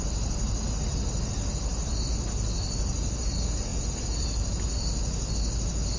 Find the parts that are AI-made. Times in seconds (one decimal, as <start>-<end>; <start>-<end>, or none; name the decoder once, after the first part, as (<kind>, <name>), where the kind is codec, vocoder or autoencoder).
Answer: none